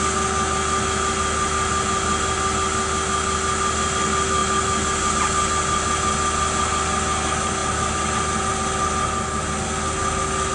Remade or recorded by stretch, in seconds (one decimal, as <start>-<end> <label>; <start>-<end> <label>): 0.0-10.5 recorded